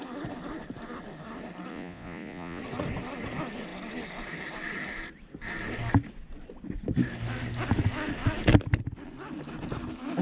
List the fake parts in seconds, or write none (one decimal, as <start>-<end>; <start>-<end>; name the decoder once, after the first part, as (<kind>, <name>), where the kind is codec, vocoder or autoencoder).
1.7-2.6 (vocoder, Vocos)